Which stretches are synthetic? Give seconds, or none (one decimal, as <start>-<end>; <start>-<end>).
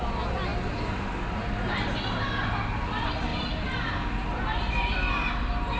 none